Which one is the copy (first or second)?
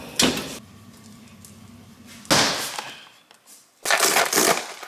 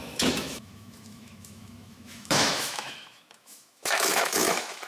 second